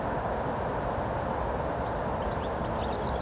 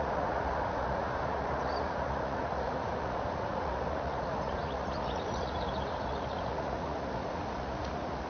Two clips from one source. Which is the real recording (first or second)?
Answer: first